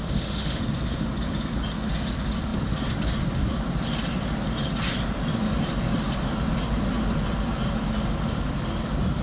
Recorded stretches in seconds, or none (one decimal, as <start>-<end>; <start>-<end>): 0.6-9.2